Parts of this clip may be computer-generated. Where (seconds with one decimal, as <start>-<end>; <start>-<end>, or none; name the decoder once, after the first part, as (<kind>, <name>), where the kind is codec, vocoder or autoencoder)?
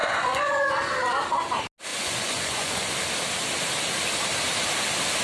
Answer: 0.0-0.7 (vocoder, Vocos); 1.9-2.9